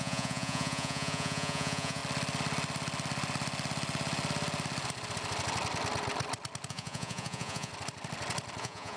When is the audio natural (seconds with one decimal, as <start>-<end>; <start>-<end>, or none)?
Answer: 2.0-6.7; 7.7-8.6